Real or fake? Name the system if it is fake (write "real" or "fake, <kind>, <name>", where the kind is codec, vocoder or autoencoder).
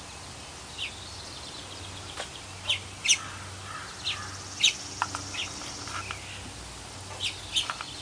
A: real